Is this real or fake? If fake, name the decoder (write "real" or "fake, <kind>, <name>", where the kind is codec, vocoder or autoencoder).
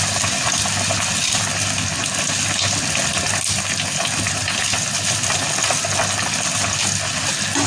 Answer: real